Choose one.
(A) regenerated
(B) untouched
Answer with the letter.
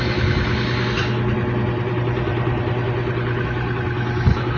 B